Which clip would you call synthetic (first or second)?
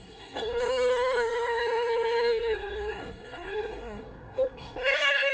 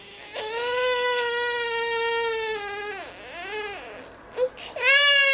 first